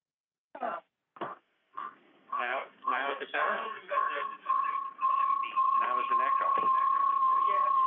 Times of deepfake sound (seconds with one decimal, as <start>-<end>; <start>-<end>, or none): 1.3-4.5